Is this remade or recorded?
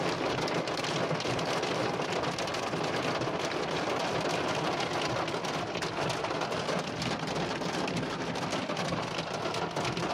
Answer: recorded